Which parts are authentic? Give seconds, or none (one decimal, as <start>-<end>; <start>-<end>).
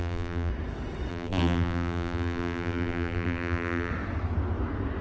0.5-1.1; 3.9-5.0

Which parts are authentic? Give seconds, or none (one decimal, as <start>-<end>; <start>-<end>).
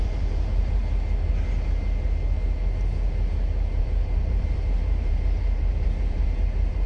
0.8-3.8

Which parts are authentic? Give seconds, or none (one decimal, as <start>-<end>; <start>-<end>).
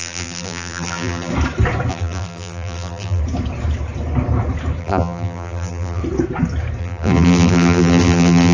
1.3-1.9; 3.2-4.8; 6.0-6.8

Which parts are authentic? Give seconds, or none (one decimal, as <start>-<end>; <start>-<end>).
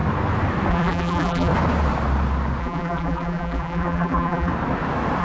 0.0-0.7; 1.5-2.6; 4.5-5.2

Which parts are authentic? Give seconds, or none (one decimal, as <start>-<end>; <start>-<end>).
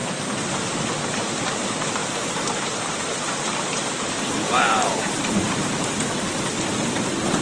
0.5-2.0; 5.8-7.4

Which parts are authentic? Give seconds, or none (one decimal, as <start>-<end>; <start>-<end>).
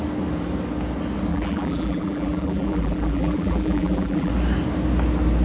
0.0-1.3; 4.3-5.4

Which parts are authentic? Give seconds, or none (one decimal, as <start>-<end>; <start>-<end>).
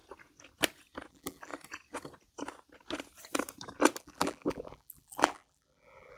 0.0-1.1; 1.5-4.0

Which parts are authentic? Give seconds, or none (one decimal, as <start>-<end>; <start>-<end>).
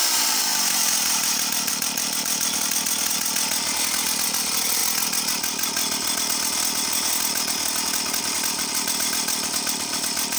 0.5-1.7; 4.8-8.2